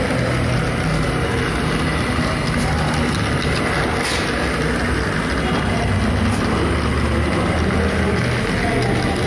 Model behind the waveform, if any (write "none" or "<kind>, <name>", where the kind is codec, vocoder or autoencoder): none